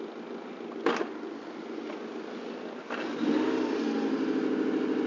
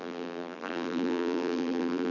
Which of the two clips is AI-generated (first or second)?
second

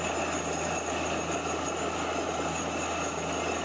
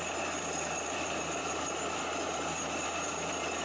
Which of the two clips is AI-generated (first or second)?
second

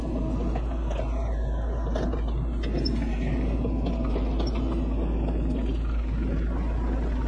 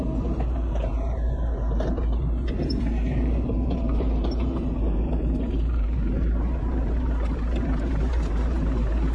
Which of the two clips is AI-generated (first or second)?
second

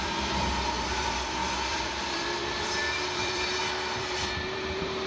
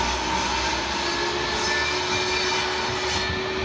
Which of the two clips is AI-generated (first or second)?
first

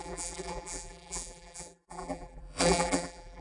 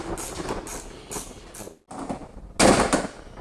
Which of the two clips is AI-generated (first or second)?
first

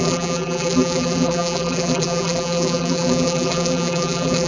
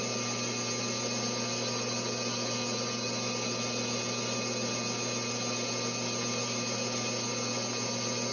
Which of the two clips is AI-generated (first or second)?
first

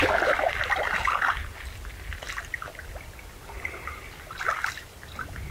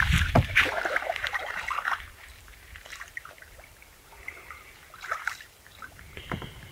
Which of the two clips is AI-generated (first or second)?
second